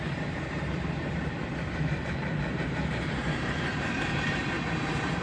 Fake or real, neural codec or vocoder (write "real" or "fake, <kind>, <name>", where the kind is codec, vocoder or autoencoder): fake, vocoder, BigVGAN v2